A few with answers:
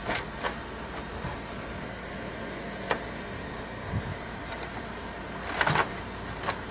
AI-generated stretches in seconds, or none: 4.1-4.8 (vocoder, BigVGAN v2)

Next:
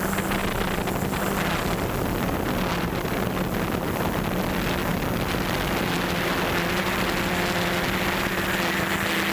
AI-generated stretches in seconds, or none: none

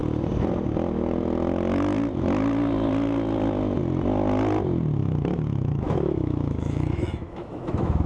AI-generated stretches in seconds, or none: 5.0-8.1 (autoencoder, DAC-VAE)

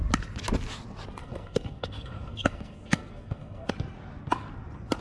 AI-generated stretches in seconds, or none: 1.2-3.7 (codec, SNAC)

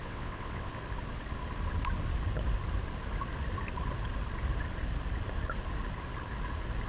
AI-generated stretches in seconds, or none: 0.0-0.7 (vocoder, WaveNeXt)